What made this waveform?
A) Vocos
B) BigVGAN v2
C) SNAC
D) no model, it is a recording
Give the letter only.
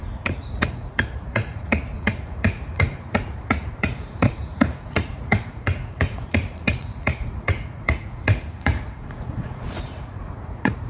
A